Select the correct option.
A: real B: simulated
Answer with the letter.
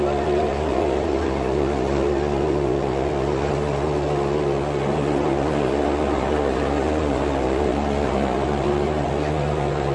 B